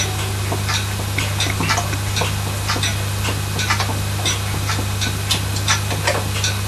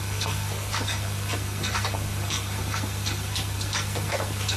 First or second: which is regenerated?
second